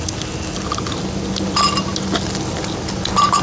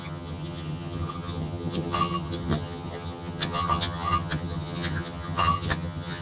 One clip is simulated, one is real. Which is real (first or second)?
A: first